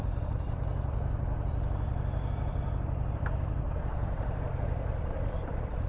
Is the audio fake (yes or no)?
yes